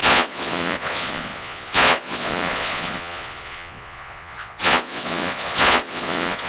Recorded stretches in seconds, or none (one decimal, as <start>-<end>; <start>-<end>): none